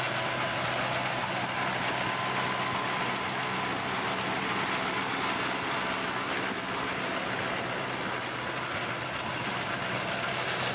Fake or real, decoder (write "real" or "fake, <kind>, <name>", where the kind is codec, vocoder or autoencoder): real